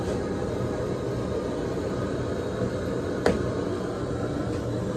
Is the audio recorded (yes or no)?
yes